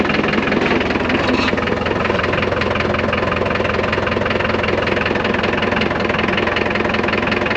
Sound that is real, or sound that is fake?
real